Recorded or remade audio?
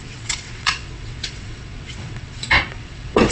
remade